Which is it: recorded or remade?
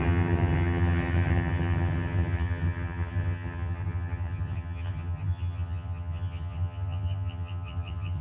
remade